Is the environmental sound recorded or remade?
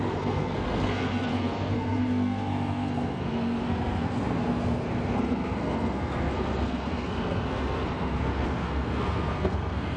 remade